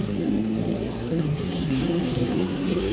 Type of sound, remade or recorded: remade